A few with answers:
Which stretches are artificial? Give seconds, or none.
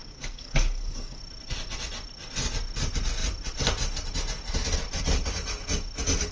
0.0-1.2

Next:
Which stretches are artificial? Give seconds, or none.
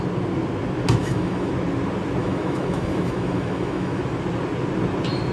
1.0-1.5; 2.2-4.0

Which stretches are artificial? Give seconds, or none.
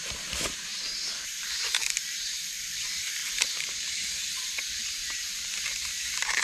0.0-6.4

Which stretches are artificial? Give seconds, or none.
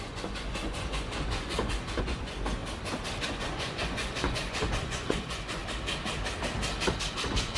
0.0-2.6; 3.2-5.6; 7.1-7.6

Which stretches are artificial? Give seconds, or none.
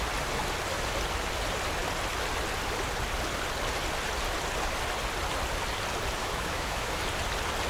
6.2-7.0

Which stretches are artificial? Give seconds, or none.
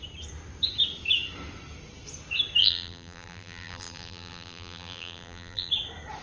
2.6-5.7